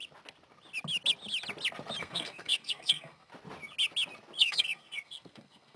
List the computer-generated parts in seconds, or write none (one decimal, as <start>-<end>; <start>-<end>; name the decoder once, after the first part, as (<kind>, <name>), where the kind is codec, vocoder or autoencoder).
2.0-3.3 (codec, SNAC); 4.4-5.8